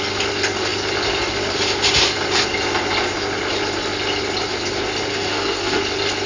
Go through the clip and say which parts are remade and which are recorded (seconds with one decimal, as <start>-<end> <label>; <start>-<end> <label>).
0.0-5.1 recorded; 5.1-5.8 remade; 5.8-6.3 recorded